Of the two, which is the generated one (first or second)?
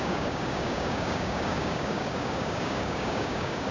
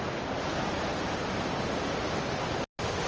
first